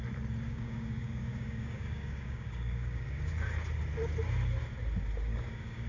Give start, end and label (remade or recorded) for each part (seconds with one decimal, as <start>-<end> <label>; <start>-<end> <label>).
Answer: 0.0-0.5 recorded; 0.5-3.3 remade; 3.3-5.3 recorded; 5.3-5.9 remade